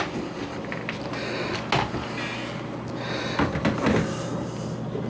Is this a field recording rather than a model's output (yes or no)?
yes